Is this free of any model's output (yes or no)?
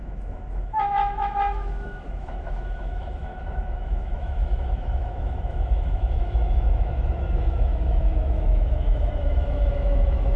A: no